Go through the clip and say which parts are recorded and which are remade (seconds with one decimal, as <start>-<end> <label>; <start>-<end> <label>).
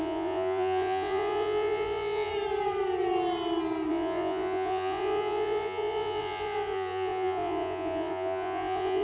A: 0.0-2.3 remade; 2.3-3.9 recorded; 3.9-9.0 remade